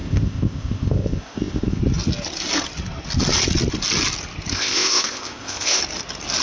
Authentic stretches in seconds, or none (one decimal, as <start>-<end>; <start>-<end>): 1.8-4.5; 5.8-6.4

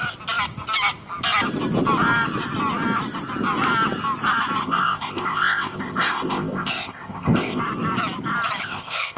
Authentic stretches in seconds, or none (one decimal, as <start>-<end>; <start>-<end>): 0.0-4.6; 7.6-8.6